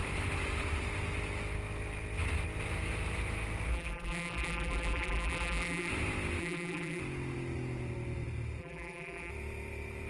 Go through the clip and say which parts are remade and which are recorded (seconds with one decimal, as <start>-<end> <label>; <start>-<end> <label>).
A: 0.0-3.7 recorded; 3.7-5.9 remade; 5.9-6.4 recorded; 6.4-7.0 remade; 7.0-8.6 recorded; 8.6-9.3 remade; 9.3-10.1 recorded